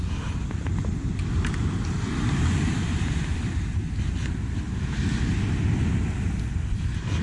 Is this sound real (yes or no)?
yes